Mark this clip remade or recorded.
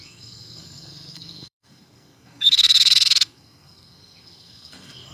remade